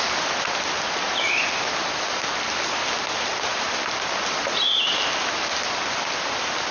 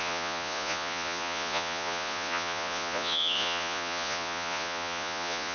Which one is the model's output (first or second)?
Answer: second